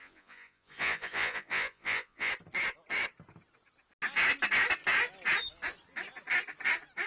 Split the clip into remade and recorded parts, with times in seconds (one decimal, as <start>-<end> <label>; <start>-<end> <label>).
0.0-2.3 remade; 2.3-7.1 recorded